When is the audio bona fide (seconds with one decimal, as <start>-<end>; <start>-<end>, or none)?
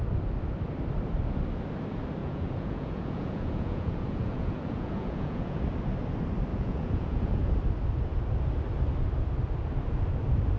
0.0-2.2; 5.6-6.5; 7.5-10.6